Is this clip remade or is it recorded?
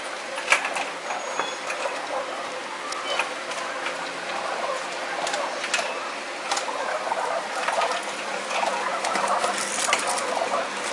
recorded